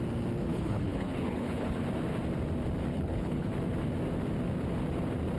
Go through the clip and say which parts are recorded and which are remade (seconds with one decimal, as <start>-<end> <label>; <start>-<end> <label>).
0.0-0.5 recorded; 0.5-1.8 remade; 1.8-2.9 recorded; 2.9-3.5 remade; 3.5-5.4 recorded